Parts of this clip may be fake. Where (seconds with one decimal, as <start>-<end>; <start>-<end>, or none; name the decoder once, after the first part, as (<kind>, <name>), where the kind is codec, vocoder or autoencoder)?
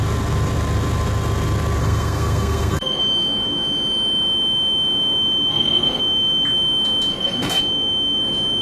1.8-3.0 (codec, SNAC); 5.5-6.0; 7.1-7.6